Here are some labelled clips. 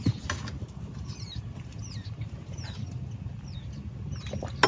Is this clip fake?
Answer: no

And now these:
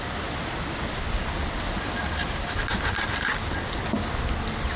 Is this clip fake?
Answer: no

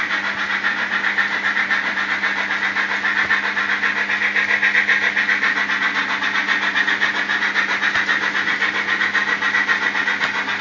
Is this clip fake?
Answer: no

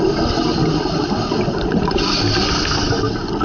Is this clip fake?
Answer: no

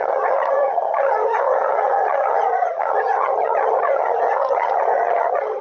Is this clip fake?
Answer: yes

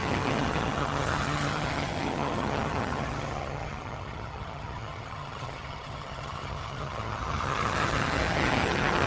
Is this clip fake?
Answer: yes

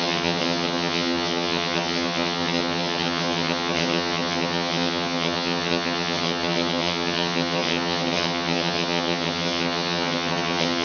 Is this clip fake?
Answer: yes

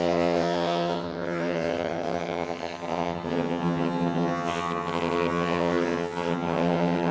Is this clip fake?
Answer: yes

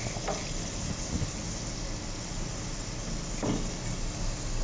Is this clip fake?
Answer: no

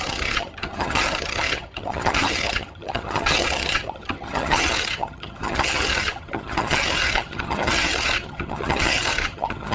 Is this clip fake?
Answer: yes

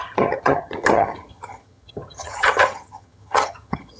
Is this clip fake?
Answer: yes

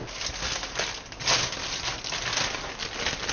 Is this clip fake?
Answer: no